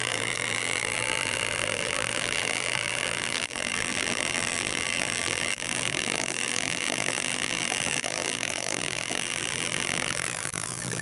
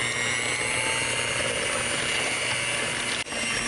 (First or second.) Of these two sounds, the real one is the second